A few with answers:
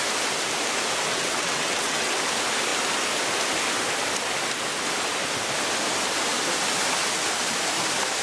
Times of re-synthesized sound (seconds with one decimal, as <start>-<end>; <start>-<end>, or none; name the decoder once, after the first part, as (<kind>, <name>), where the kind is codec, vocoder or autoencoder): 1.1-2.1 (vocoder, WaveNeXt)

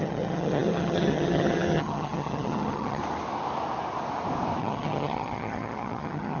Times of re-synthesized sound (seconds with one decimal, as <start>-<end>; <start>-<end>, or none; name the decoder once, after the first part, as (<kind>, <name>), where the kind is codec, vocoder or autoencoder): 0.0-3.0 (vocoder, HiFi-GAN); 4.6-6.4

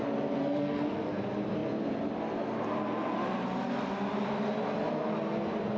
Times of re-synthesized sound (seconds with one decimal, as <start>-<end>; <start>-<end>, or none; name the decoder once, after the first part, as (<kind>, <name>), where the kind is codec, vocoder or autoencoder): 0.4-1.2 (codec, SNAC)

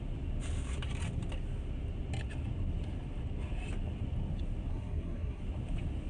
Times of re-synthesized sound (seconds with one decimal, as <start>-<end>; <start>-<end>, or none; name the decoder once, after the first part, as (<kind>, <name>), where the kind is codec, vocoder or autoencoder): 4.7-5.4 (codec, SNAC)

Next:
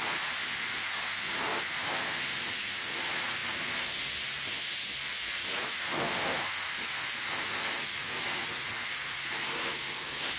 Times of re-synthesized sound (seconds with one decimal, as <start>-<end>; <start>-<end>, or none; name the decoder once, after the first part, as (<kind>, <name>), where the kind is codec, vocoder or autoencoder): none

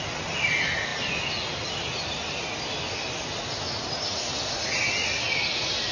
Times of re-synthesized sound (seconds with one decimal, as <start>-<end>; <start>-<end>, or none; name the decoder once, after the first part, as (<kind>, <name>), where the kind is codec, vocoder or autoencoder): none

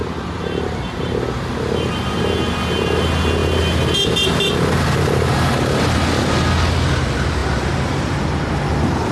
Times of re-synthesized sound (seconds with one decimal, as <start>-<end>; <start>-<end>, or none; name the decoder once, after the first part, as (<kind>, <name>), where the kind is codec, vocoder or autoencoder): none

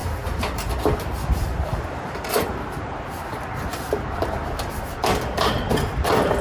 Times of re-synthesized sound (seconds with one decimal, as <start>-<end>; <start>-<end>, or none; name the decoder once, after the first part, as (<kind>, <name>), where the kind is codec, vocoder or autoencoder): 0.0-2.3 (vocoder, BigVGAN v2); 3.7-5.7